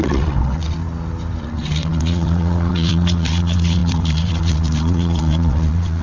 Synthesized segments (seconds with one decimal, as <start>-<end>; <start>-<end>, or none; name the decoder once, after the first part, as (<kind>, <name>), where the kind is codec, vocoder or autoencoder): 0.0-0.8 (vocoder, WaveNeXt); 1.4-6.0